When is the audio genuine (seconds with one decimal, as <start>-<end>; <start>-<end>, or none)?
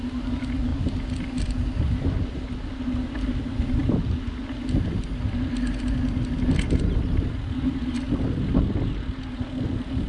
0.0-10.1